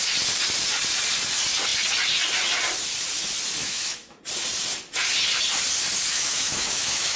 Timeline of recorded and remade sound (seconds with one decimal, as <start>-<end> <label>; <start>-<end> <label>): 0.0-3.6 recorded; 3.6-4.2 remade; 4.2-6.1 recorded; 6.1-7.2 remade